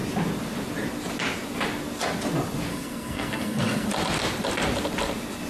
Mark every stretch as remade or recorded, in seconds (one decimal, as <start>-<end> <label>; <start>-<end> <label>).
0.0-2.7 recorded; 2.7-3.9 remade; 3.9-5.5 recorded